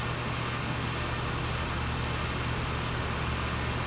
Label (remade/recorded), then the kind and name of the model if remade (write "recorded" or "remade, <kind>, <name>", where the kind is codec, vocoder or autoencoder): recorded